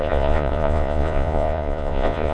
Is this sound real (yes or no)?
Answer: no